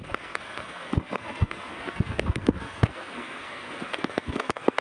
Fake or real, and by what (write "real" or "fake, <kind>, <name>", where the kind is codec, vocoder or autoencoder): fake, codec, SNAC